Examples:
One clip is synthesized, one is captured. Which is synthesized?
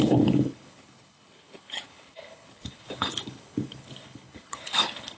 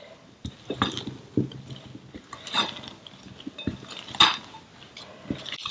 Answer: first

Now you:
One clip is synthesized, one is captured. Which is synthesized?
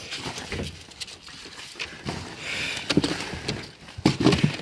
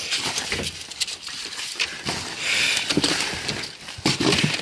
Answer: second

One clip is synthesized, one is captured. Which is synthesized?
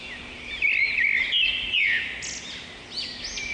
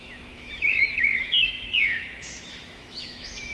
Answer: second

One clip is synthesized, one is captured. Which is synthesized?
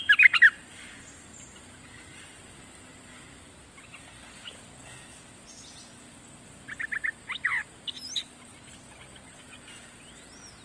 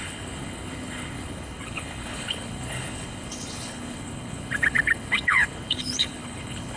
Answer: second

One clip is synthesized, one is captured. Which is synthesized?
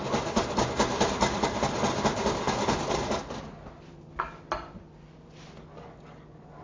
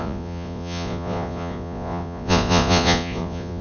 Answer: second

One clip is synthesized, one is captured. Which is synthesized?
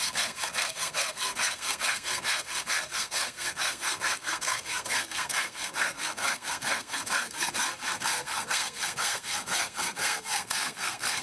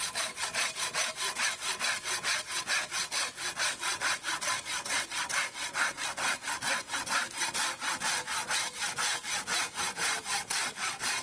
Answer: first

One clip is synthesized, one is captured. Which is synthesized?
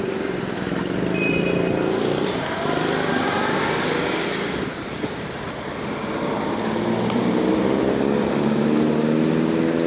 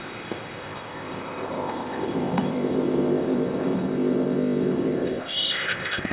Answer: second